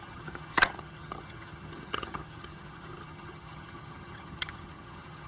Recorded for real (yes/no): no